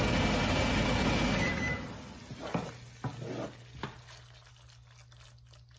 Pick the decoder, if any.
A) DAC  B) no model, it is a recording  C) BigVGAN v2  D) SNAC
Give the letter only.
B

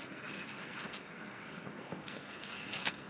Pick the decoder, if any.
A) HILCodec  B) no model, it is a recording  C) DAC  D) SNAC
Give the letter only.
D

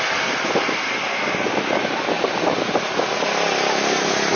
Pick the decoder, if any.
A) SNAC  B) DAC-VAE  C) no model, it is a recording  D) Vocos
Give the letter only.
C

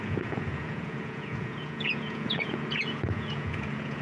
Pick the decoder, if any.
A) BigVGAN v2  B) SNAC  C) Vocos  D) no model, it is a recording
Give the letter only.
C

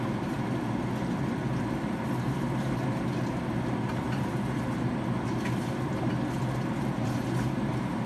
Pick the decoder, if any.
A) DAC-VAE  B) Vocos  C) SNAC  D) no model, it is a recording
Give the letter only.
D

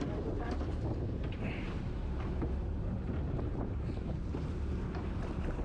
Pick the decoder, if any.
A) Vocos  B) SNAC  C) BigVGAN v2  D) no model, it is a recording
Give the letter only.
C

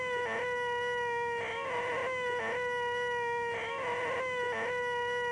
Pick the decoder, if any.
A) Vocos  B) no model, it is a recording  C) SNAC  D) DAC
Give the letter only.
B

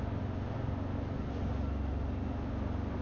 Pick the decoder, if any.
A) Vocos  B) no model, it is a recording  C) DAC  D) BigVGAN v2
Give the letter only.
B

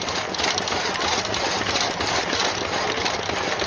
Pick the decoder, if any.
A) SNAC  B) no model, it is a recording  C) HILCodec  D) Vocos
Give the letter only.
B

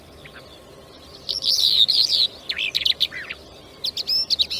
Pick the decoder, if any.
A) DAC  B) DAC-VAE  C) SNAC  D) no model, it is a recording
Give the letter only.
D